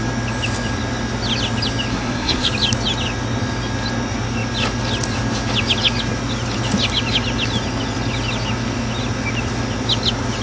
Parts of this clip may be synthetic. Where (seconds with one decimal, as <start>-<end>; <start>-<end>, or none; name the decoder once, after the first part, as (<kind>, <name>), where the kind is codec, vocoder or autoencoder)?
1.9-2.5 (codec, SNAC)